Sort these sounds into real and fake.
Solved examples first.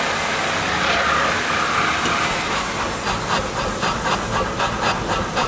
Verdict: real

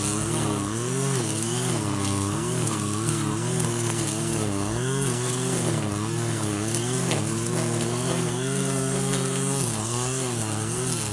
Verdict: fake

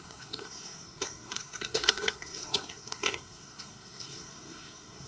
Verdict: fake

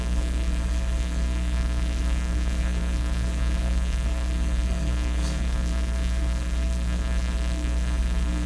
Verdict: fake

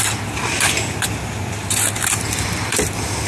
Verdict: real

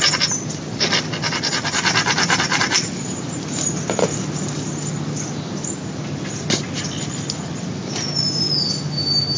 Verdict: real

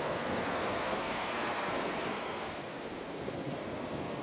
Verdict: fake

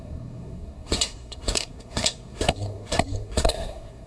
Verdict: fake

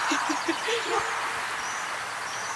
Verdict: real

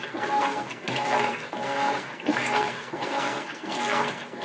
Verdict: fake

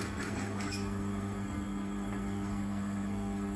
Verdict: fake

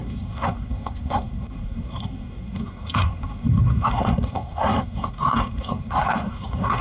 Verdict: fake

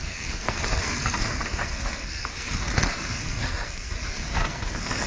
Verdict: fake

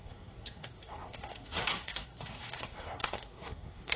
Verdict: fake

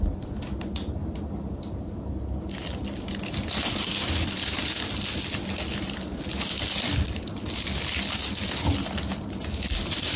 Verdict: real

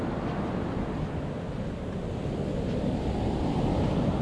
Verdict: real